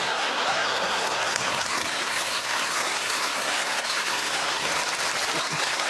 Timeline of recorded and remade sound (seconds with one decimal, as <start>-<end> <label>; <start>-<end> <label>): 0.0-4.7 remade; 4.7-5.4 recorded; 5.4-5.9 remade